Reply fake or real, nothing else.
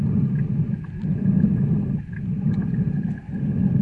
real